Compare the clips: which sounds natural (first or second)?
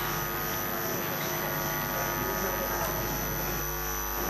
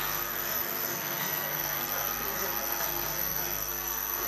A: first